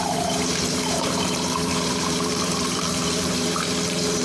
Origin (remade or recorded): remade